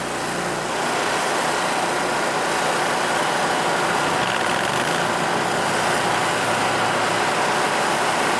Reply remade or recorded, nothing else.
recorded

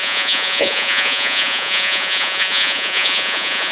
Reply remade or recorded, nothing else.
remade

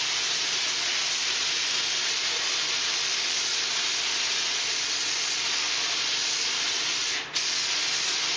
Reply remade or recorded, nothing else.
recorded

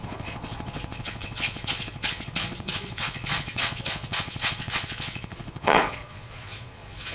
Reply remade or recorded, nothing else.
remade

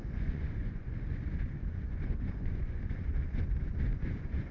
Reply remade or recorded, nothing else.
remade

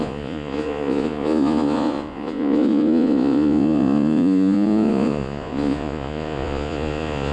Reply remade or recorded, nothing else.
remade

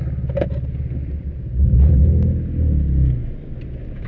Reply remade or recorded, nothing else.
recorded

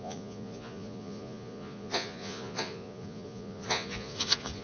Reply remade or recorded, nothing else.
remade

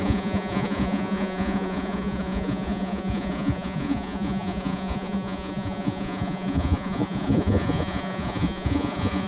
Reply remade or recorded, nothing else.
remade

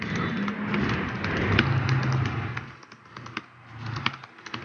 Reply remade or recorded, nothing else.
recorded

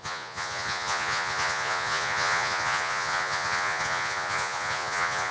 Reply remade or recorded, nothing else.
remade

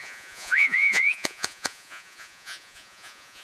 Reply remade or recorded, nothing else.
remade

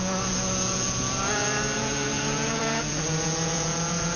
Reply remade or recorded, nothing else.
remade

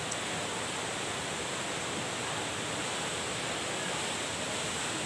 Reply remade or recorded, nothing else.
recorded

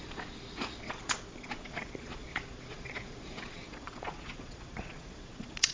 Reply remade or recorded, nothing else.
remade